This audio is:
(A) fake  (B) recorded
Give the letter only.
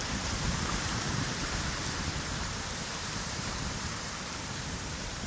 A